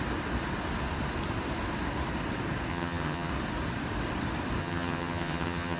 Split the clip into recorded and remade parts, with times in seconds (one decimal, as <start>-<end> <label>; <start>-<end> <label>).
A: 0.0-2.7 recorded; 2.7-3.3 remade; 3.3-4.6 recorded; 4.6-5.8 remade